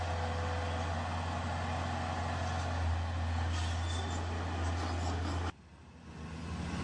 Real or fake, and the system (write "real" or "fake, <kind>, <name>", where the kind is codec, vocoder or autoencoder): real